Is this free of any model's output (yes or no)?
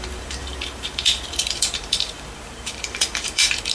no